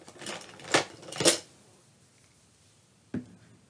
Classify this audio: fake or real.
real